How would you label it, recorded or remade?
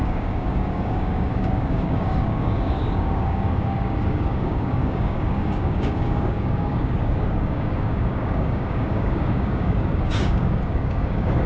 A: remade